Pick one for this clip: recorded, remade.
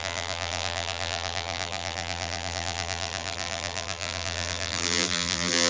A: remade